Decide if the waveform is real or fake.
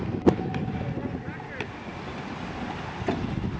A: real